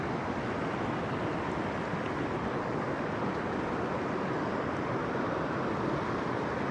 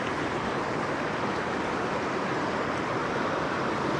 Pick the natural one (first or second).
first